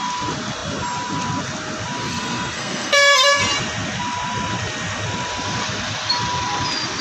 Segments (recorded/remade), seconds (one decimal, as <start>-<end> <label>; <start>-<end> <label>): 0.0-2.1 recorded; 2.1-3.4 remade; 3.4-7.0 recorded